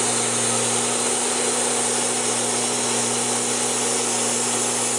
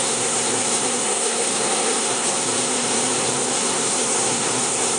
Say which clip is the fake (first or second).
second